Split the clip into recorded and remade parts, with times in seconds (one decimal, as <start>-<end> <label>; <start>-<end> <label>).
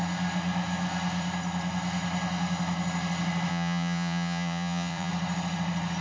0.0-3.5 recorded; 3.5-5.1 remade; 5.1-6.0 recorded